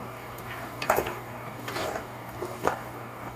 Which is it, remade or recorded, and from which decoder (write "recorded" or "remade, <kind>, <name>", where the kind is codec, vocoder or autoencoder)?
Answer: remade, codec, DAC